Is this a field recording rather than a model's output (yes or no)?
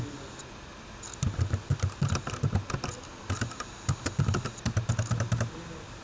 yes